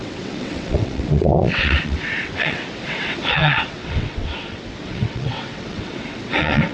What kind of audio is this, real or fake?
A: fake